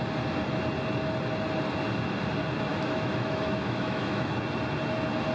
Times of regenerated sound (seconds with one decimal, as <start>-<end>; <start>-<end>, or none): 2.7-4.3